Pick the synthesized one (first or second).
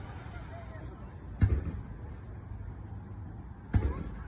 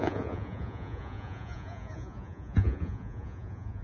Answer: second